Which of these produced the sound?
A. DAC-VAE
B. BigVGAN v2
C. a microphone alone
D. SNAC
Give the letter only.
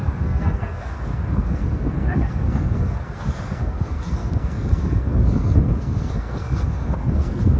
D